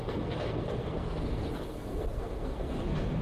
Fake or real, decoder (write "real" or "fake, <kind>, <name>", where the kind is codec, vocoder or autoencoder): fake, codec, SNAC